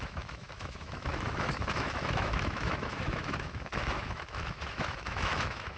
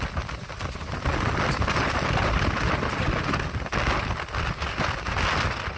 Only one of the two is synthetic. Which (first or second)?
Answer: first